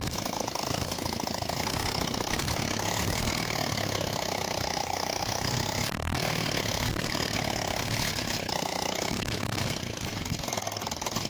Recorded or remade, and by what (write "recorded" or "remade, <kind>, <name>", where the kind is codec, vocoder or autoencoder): remade, codec, SNAC